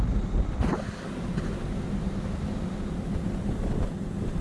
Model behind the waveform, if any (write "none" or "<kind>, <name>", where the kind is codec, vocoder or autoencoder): none